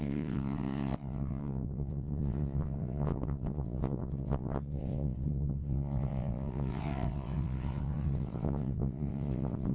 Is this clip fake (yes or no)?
yes